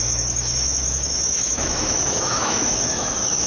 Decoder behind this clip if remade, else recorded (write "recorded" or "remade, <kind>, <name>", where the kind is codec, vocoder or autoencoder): remade, autoencoder, DAC-VAE